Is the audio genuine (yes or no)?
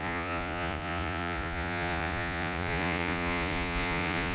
no